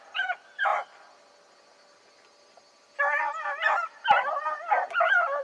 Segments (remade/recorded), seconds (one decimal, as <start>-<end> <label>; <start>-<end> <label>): 0.0-5.4 recorded